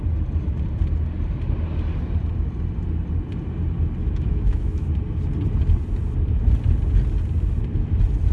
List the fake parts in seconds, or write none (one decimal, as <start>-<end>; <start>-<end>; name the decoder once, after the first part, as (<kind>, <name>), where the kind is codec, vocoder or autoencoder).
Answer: 4.0-4.9 (autoencoder, DAC-VAE)